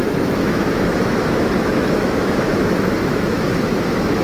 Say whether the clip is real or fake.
fake